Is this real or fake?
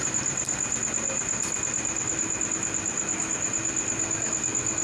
real